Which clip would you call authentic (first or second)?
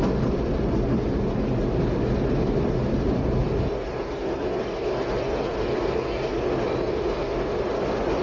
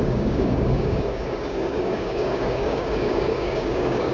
first